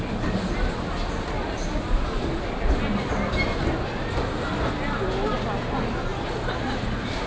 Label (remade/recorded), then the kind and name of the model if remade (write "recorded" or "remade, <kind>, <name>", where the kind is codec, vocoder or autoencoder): recorded